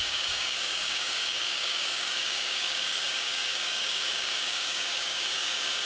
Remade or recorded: remade